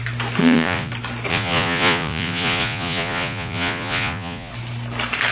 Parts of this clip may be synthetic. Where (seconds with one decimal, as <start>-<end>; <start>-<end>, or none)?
0.4-0.9; 1.3-4.5

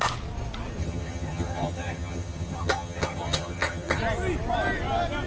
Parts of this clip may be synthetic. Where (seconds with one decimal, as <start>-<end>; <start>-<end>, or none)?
0.8-4.0